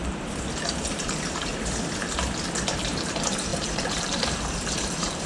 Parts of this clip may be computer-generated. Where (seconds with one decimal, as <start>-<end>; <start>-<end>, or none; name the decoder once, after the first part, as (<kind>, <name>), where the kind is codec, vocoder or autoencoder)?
1.0-2.0 (vocoder, BigVGAN v2); 2.8-5.3